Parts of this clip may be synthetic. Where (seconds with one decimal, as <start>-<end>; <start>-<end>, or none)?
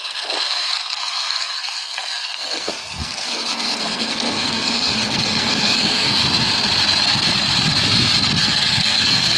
0.0-6.2; 8.4-9.4